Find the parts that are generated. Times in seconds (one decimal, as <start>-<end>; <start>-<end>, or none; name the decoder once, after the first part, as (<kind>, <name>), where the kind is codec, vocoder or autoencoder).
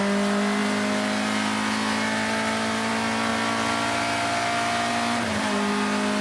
none